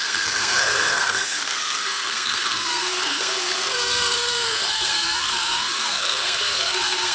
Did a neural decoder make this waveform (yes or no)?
yes